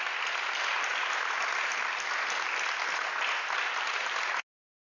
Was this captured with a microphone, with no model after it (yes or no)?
yes